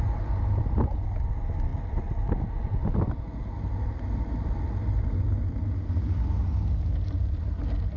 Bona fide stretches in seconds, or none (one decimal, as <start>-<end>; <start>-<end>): 0.0-8.0